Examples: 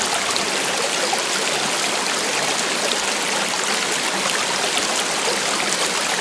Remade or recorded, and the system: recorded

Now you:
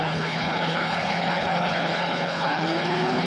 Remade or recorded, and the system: remade, codec, HILCodec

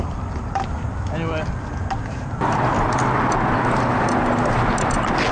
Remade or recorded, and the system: recorded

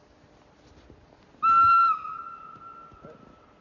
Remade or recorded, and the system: recorded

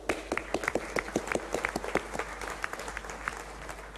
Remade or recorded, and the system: recorded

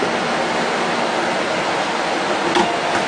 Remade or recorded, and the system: recorded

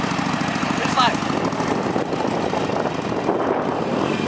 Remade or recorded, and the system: recorded